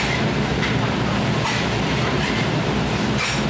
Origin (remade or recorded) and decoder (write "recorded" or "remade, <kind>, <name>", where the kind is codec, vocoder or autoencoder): remade, vocoder, BigVGAN v2